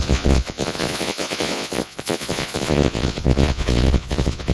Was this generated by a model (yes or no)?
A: yes